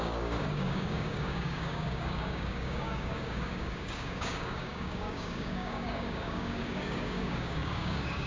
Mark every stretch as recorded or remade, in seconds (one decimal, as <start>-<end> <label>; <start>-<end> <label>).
0.0-8.3 remade